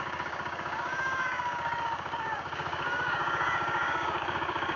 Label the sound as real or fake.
fake